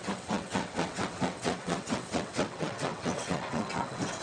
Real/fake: fake